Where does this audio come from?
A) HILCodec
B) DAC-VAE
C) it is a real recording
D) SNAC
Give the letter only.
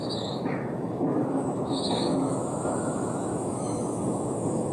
B